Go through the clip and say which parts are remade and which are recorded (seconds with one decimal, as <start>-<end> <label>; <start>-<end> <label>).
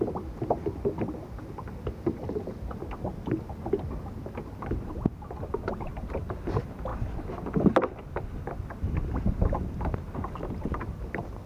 0.0-11.5 recorded